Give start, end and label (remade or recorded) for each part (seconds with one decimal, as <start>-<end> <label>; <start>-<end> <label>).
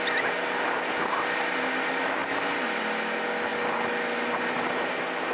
0.0-5.3 recorded